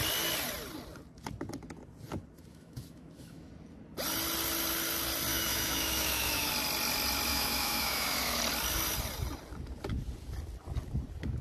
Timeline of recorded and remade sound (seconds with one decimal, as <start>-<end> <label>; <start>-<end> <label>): 0.0-2.5 recorded; 2.5-3.5 remade; 3.5-5.3 recorded; 5.3-6.5 remade; 6.5-7.3 recorded; 7.3-8.4 remade; 8.4-11.4 recorded